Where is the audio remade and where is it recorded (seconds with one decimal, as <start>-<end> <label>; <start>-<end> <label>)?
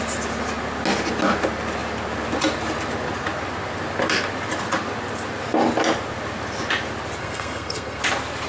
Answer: 0.0-7.2 recorded; 7.2-8.0 remade; 8.0-8.5 recorded